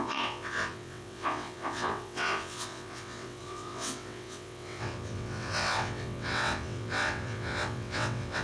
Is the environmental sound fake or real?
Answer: fake